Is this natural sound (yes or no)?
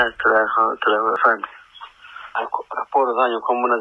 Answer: yes